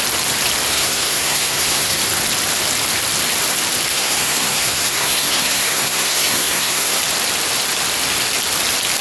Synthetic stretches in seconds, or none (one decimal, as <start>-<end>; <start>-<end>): 0.7-2.0; 3.9-7.0